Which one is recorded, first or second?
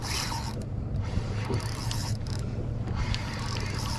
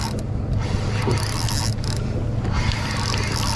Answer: second